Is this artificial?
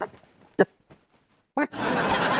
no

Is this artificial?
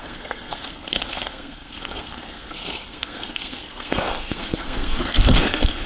yes